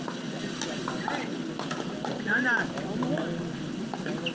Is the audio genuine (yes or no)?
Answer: yes